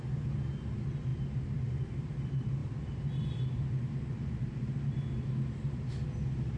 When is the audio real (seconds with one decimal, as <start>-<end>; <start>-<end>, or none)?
0.0-2.6; 3.4-6.6